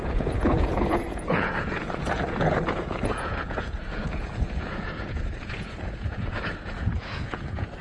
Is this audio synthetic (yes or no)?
yes